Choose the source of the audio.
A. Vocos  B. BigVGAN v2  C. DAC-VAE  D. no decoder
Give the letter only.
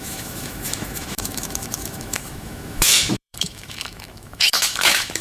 C